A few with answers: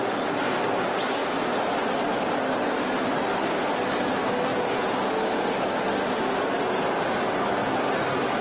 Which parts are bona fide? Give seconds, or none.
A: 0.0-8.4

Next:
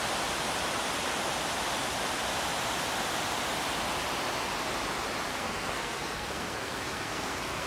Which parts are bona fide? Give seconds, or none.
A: 0.0-5.3

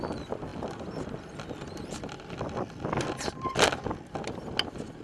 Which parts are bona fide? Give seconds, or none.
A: 0.0-5.0

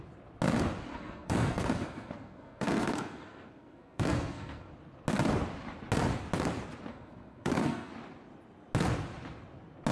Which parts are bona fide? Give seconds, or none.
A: 0.0-0.9; 4.7-6.9; 7.9-9.9

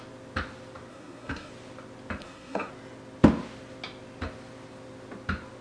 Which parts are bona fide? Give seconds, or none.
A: 0.0-0.9; 1.5-2.2; 2.7-5.6